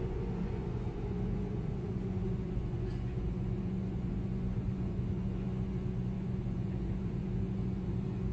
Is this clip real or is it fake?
fake